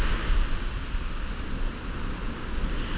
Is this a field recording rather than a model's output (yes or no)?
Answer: yes